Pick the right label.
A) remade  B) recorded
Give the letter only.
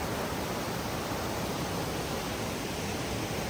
B